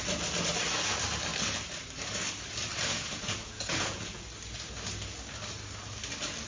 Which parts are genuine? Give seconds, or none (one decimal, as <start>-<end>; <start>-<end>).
0.0-2.9; 4.2-6.5